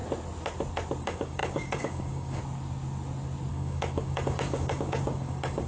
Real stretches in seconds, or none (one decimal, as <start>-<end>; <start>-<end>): 0.0-1.0; 2.4-3.5